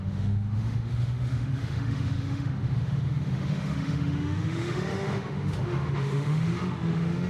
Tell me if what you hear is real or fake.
fake